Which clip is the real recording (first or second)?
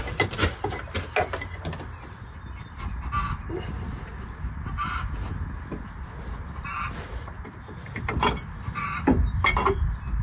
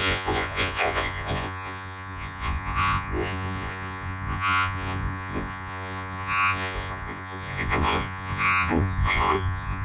first